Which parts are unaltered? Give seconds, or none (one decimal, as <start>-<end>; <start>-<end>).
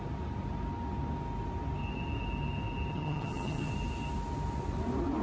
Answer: 0.0-2.9; 3.7-5.2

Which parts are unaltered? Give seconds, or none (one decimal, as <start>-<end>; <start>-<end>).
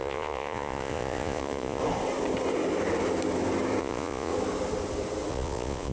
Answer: 1.8-3.8; 4.3-5.3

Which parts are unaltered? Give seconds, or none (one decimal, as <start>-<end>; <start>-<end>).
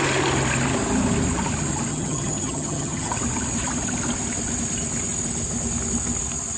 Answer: 0.0-1.9; 3.1-6.6